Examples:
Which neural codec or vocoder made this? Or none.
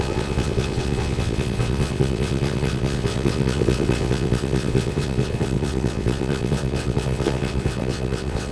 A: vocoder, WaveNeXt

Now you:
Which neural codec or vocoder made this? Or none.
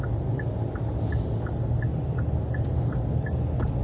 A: none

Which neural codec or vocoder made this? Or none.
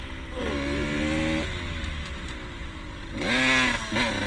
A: none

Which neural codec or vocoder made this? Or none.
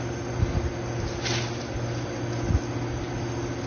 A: none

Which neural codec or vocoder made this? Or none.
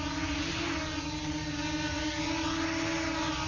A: none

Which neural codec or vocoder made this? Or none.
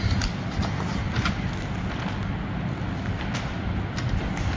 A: none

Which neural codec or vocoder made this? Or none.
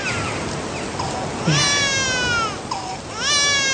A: none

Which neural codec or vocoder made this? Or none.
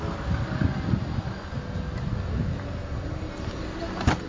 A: none